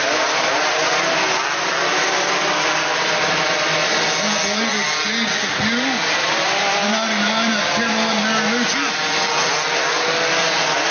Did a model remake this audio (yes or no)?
no